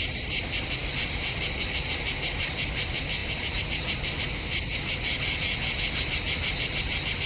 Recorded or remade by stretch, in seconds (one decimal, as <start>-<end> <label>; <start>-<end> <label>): 0.0-7.3 recorded